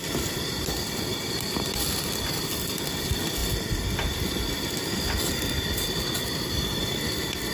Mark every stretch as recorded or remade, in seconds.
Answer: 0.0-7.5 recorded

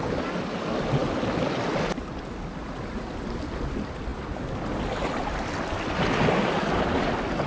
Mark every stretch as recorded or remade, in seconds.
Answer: 0.0-7.5 recorded

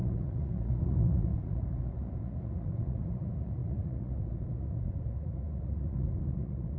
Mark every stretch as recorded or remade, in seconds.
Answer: 0.0-6.8 remade

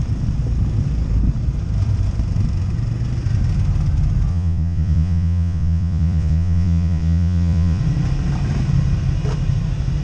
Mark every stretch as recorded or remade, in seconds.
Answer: 0.0-4.3 recorded; 4.3-7.8 remade; 7.8-10.0 recorded

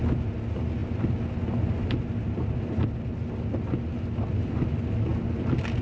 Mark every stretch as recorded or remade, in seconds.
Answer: 0.0-5.8 recorded

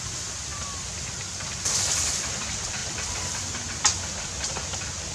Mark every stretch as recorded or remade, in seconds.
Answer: 0.0-5.1 recorded